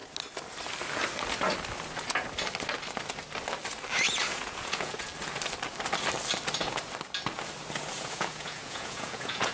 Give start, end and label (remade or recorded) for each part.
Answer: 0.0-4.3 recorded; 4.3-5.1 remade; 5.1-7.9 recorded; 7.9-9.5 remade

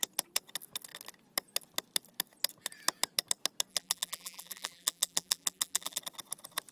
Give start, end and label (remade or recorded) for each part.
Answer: 0.0-3.7 recorded; 3.7-6.0 remade; 6.0-6.7 recorded

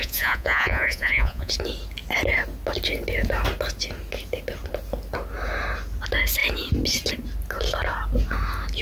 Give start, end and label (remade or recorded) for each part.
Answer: 0.0-1.5 remade; 1.5-8.8 recorded

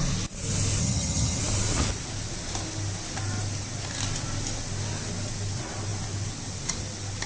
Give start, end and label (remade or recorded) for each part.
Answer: 0.0-0.8 recorded; 0.8-1.4 remade; 1.4-7.3 recorded

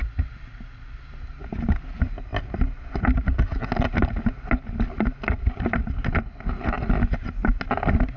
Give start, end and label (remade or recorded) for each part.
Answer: 0.0-8.2 recorded